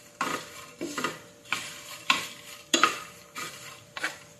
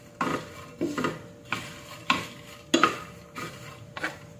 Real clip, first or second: second